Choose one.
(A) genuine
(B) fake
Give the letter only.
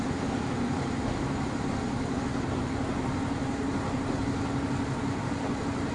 A